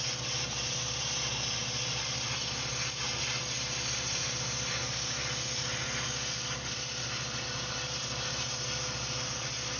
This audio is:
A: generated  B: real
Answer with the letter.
B